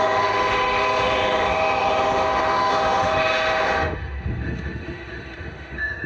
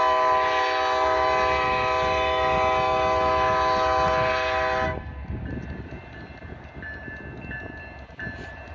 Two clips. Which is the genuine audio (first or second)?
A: second